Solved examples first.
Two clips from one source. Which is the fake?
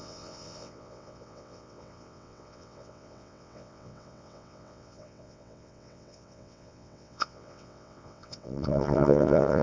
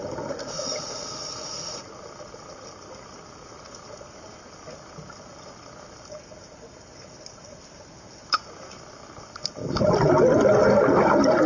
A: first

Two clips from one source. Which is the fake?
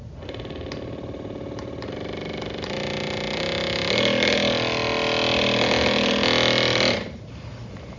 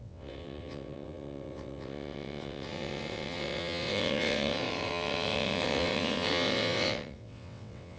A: second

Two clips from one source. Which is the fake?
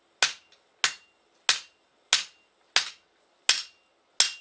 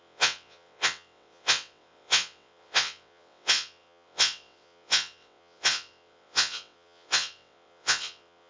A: second